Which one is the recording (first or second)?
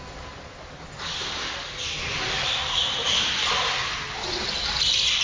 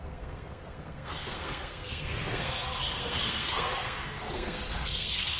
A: first